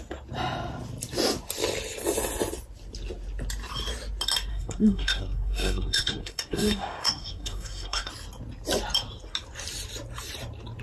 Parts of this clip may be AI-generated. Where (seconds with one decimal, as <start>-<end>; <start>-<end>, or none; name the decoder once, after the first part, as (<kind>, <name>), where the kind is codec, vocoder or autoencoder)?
4.5-8.1 (codec, SNAC)